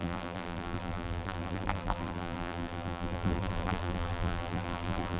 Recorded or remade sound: remade